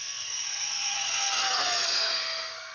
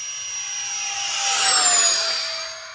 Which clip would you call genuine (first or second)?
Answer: second